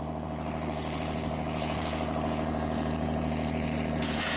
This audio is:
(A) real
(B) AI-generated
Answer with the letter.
B